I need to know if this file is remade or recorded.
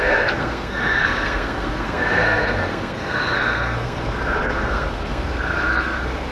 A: remade